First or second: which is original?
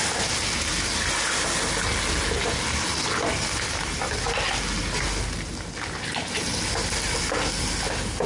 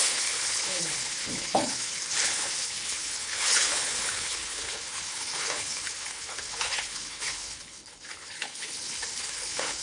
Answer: first